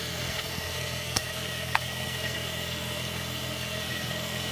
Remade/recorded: remade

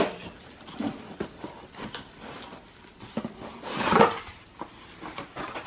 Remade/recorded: recorded